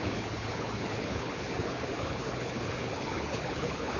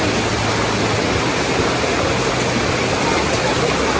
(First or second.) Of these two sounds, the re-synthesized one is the first